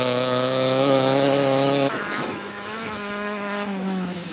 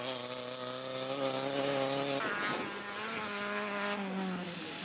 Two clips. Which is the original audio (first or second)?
second